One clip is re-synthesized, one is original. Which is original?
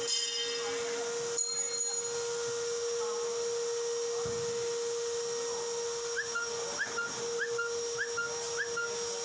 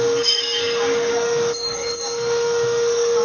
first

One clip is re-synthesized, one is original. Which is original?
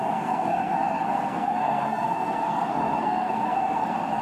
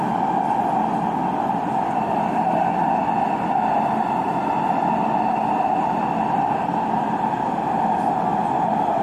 second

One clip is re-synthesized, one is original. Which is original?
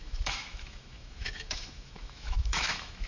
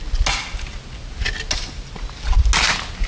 second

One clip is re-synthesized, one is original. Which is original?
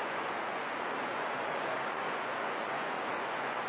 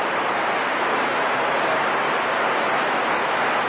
second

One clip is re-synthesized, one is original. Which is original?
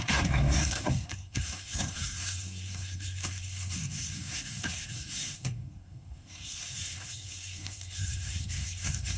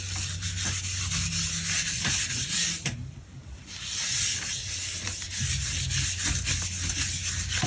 second